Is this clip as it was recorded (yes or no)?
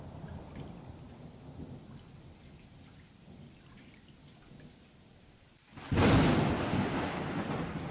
yes